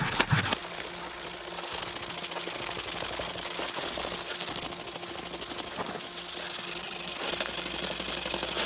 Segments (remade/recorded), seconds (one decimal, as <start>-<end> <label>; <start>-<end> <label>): 0.0-8.7 recorded